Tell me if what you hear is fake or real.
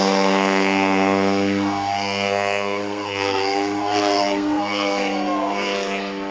fake